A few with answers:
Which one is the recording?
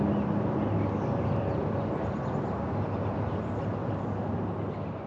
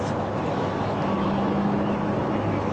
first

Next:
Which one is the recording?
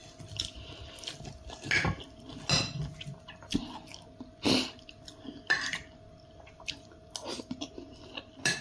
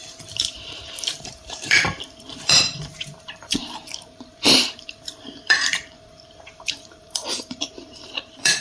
first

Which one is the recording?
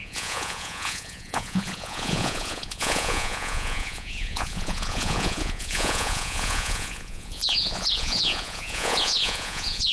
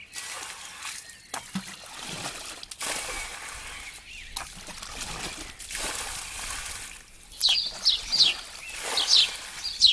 second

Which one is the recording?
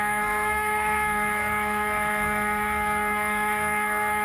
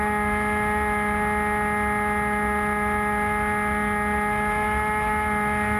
second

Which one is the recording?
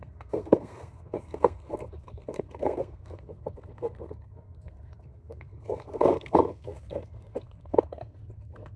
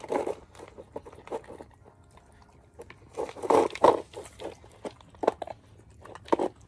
second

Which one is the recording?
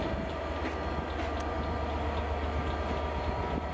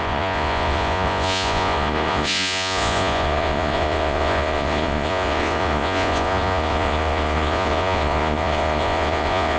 first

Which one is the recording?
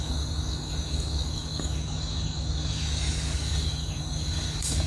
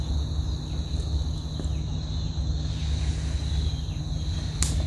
second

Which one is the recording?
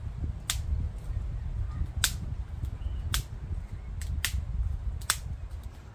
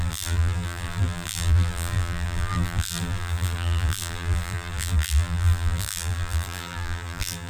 first